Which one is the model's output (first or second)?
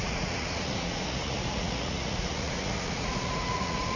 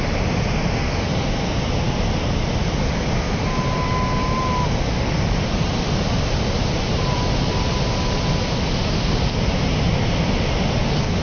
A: first